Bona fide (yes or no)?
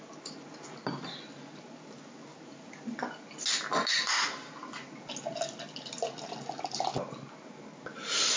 yes